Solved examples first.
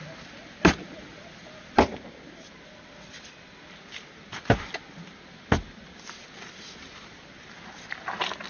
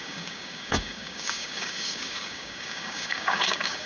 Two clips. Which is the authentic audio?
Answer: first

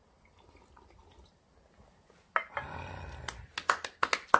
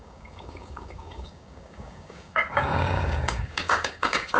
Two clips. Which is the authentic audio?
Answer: first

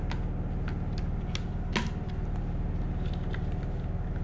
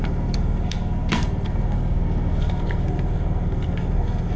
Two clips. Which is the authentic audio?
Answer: first